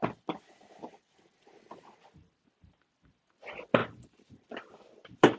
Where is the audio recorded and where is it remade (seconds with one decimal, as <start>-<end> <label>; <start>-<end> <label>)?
0.0-3.8 recorded; 3.8-5.4 remade